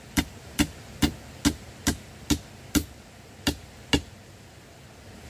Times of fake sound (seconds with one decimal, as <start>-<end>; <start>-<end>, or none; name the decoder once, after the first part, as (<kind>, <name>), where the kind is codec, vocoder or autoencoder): none